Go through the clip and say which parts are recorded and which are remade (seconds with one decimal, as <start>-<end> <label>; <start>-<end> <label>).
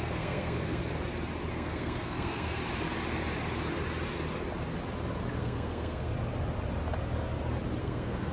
0.0-0.8 remade; 0.8-1.5 recorded; 1.5-2.6 remade; 2.6-5.4 recorded; 5.4-6.1 remade; 6.1-7.8 recorded; 7.8-8.3 remade